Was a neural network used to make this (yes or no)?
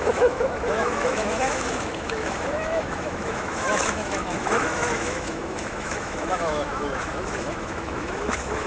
yes